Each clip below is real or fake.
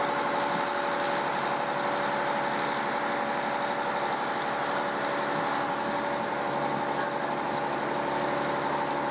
real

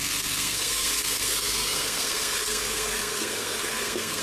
fake